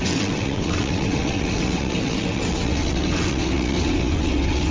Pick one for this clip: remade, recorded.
remade